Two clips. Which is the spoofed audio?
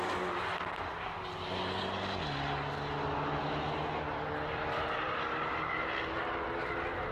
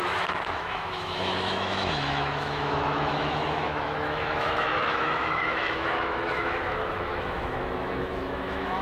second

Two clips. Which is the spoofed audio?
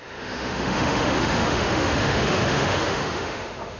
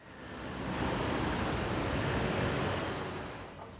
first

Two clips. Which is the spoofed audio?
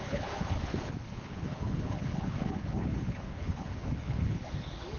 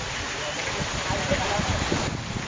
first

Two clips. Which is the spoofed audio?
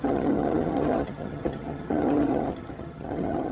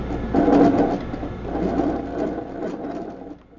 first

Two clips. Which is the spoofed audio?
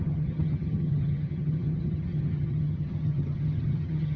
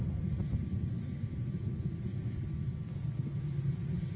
first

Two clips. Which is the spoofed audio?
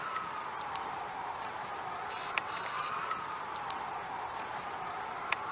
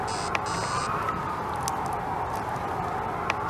first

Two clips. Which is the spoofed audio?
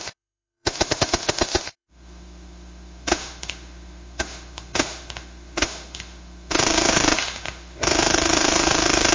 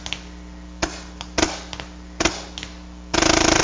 first